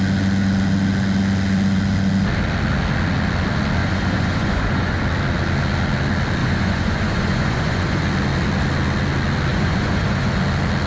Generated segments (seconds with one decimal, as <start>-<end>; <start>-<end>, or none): 3.8-5.0; 6.4-8.0; 9.5-10.3